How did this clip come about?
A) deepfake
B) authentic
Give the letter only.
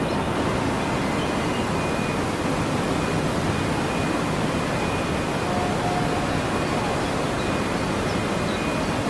B